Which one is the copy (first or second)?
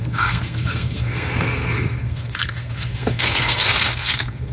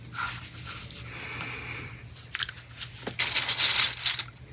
first